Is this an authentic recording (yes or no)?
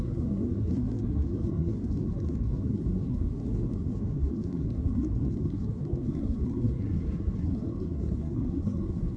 no